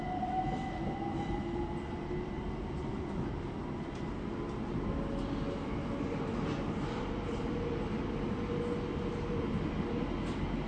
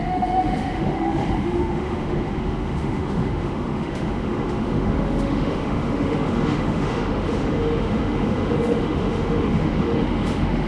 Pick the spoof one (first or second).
second